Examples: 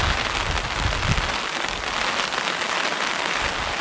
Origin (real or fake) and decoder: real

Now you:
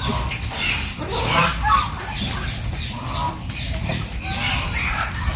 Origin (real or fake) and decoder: real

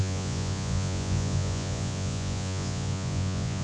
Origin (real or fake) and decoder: fake, vocoder, Vocos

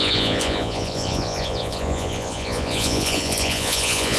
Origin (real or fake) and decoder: fake, vocoder, Vocos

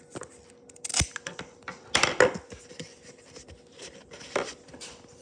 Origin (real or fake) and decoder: real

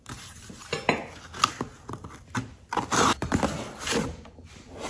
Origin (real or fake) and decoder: real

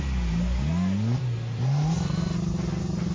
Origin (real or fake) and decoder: real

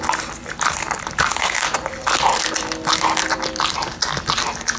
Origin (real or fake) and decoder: real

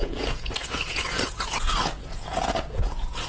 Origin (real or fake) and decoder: fake, vocoder, Vocos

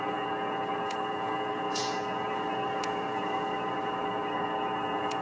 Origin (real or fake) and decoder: fake, vocoder, Vocos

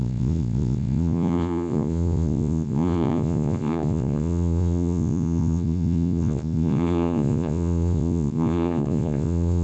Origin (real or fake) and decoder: fake, vocoder, Vocos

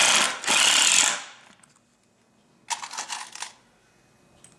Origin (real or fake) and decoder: real